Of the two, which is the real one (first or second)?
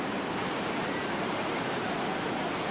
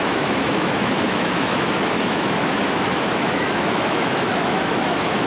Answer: first